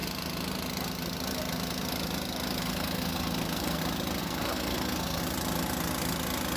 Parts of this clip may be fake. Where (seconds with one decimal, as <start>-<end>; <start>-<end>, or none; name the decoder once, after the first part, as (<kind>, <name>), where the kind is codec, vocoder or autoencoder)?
2.6-3.8 (codec, SNAC); 4.2-5.2